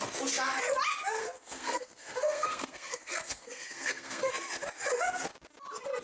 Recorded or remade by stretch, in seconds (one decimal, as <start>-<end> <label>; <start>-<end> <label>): 0.0-1.2 recorded; 1.2-4.3 remade; 4.3-6.0 recorded